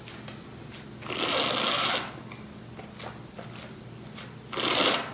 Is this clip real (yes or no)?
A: yes